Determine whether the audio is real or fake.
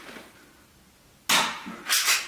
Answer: real